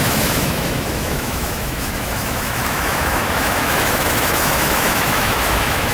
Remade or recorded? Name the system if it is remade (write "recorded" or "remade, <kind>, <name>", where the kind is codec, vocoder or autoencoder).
remade, autoencoder, DAC-VAE